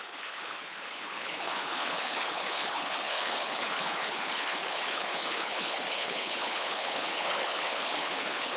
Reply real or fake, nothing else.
fake